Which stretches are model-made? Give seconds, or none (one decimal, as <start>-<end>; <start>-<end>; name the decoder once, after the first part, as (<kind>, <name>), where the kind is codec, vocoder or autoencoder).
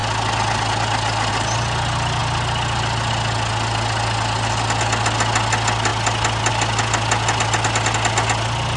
none